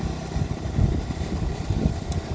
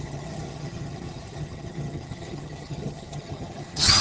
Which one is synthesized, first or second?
second